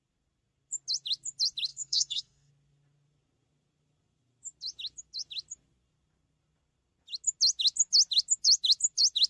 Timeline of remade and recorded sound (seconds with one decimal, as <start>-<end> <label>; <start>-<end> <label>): 0.0-1.7 recorded; 1.7-2.5 remade; 2.5-9.3 recorded